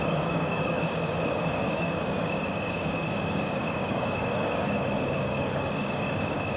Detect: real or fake fake